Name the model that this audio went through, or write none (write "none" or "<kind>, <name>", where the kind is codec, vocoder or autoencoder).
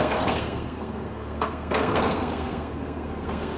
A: codec, SNAC